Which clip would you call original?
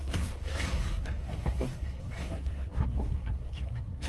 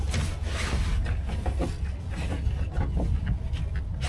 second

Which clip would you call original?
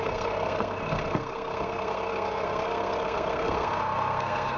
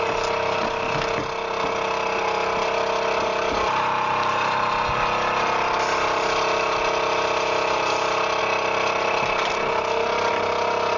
second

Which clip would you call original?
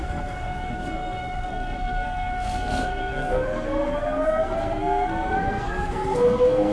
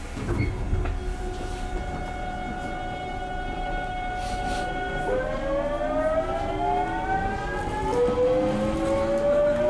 second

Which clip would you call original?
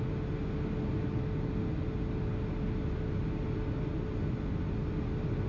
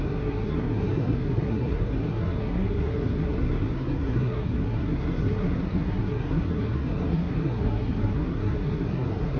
first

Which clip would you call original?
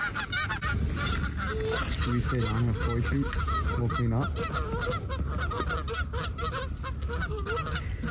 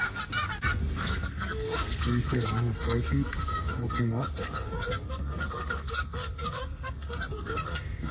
first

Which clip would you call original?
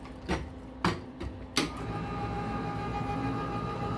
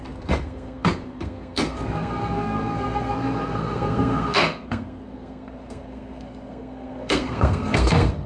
first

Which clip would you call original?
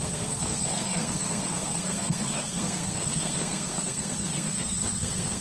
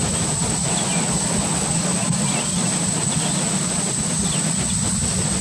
second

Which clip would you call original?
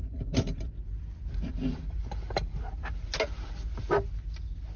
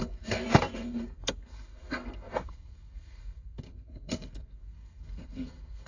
first